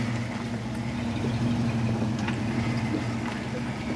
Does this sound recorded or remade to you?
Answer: recorded